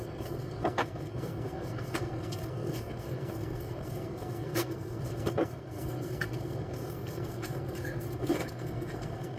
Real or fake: fake